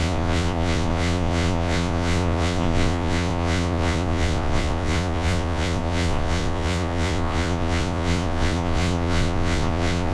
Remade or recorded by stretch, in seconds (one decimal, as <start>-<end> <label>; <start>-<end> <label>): 0.0-10.1 remade